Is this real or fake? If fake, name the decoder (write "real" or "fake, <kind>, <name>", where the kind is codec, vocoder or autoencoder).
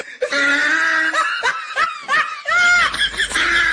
real